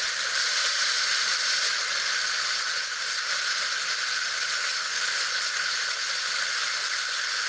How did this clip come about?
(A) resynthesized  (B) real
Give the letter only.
B